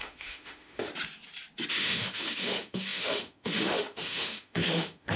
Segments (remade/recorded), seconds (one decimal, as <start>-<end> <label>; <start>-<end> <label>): 0.0-0.9 remade; 0.9-1.7 recorded; 1.7-5.2 remade